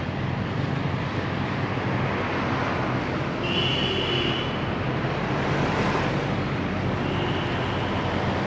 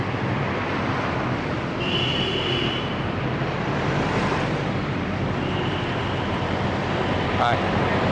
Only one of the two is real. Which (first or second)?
first